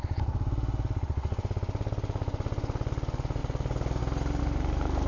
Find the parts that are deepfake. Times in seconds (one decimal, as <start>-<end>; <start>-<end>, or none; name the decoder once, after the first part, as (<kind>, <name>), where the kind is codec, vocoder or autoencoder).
4.4-5.1 (codec, SNAC)